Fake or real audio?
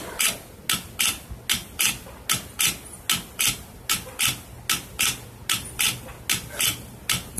real